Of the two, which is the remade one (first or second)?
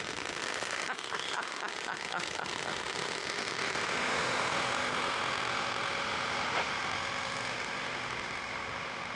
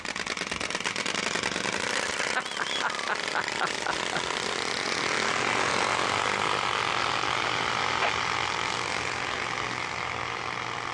first